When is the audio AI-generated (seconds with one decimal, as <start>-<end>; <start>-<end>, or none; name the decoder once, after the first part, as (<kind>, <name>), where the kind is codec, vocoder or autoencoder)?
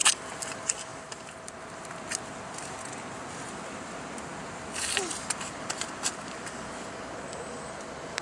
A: none